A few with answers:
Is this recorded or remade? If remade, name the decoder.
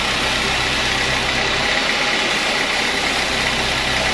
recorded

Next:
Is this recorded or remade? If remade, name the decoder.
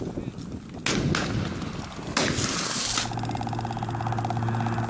recorded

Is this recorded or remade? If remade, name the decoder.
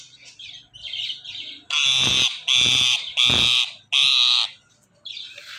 recorded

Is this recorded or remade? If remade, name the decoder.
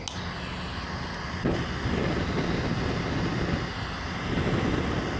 recorded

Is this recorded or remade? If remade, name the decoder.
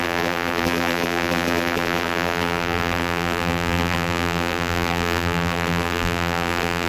remade, vocoder, BigVGAN v2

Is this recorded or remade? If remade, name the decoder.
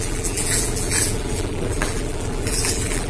remade, vocoder, BigVGAN v2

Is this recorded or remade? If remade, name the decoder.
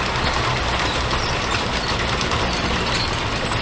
recorded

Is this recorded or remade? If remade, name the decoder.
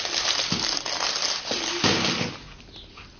recorded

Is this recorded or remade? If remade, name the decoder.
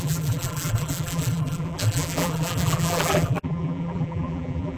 remade, vocoder, BigVGAN v2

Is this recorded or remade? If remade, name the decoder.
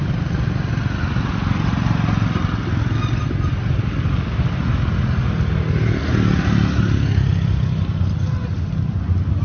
recorded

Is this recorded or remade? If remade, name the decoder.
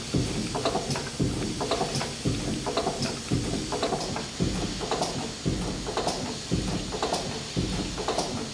recorded